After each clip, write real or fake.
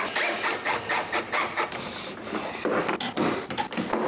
real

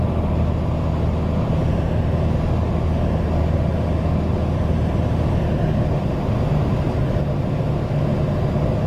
real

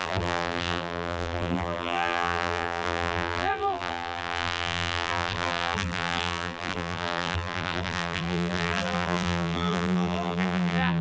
fake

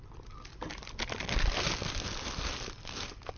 real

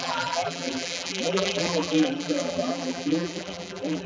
fake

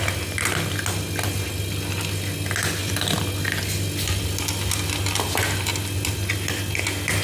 real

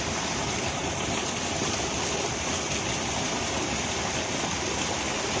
real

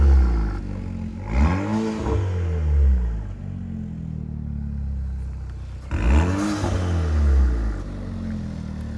real